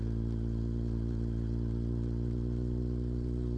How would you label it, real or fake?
real